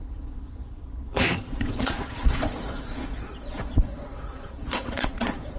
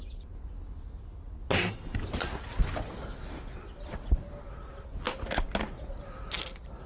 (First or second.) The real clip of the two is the second